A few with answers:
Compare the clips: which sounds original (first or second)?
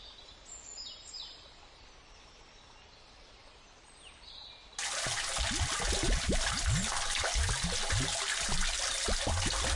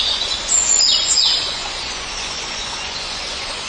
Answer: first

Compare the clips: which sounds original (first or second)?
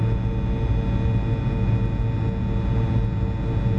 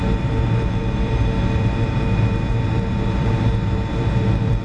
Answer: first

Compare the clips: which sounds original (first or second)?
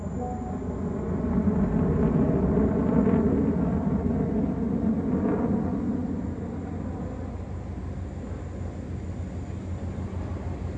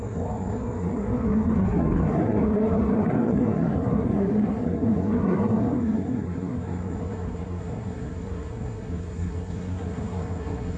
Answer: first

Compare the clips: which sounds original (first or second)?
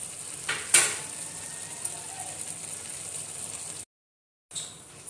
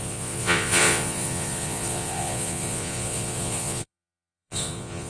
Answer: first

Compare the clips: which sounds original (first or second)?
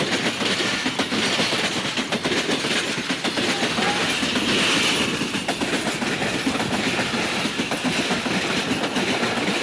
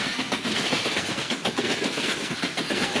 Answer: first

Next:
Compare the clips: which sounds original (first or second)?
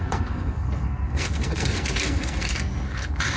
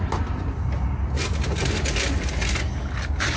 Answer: second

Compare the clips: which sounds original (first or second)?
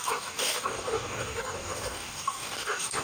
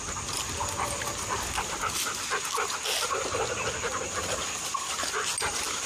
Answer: second